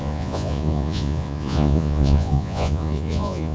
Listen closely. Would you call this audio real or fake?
fake